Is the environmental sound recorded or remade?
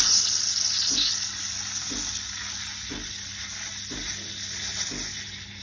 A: recorded